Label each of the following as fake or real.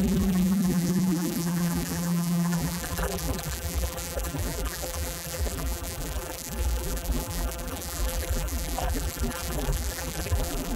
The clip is fake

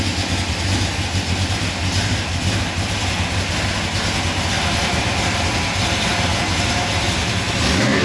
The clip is real